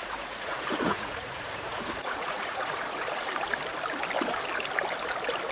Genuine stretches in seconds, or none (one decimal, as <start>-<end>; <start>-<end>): 3.3-5.5